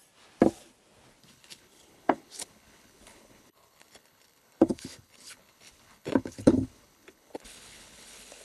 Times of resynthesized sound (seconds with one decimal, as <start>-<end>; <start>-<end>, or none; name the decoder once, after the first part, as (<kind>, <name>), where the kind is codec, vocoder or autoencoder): 1.2-8.4 (codec, HILCodec)